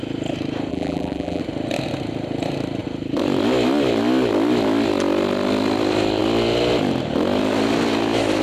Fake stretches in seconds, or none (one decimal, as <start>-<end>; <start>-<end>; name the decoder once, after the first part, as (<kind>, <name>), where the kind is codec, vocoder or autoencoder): 0.7-1.4 (vocoder, BigVGAN v2)